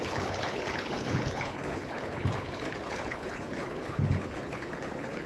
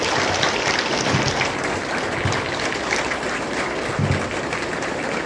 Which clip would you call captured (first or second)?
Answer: second